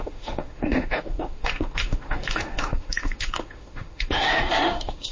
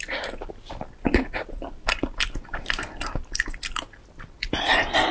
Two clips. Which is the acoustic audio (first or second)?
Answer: second